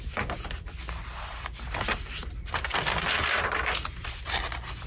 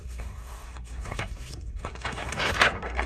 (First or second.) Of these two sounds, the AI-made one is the second